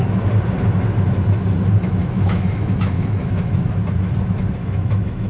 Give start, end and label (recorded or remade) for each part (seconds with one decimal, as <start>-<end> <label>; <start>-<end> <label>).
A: 0.0-2.0 recorded; 2.0-3.8 remade; 3.8-4.6 recorded; 4.6-5.3 remade